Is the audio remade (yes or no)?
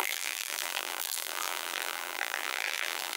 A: yes